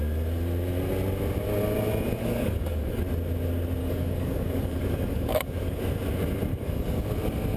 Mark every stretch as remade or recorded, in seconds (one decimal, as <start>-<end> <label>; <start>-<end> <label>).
0.0-2.2 recorded; 2.2-3.0 remade; 3.0-3.8 recorded; 3.8-5.8 remade; 5.8-6.5 recorded; 6.5-7.1 remade; 7.1-7.6 recorded